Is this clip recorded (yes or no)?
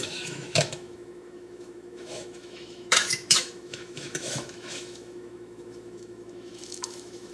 no